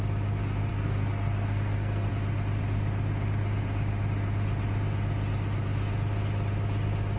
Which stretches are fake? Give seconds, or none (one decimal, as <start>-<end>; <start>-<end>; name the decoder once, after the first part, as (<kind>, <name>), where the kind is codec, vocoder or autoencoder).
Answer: 0.7-2.1 (codec, SNAC)